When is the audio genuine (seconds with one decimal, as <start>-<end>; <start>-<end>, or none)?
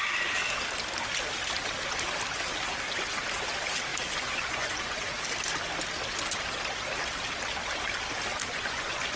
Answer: 0.0-3.9; 5.1-8.5